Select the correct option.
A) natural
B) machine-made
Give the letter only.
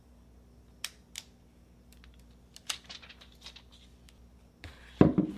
A